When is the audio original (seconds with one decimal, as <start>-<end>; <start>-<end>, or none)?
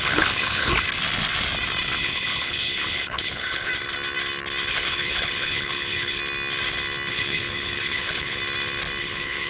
0.7-2.0; 3.7-4.7; 6.2-7.1; 8.4-9.0